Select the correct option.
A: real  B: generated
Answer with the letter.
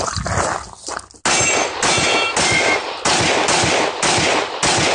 A